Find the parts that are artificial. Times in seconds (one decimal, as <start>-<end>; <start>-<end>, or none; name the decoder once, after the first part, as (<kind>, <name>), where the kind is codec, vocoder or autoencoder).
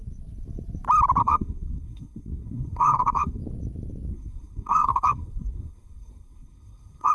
1.2-3.4 (codec, SNAC); 4.1-7.1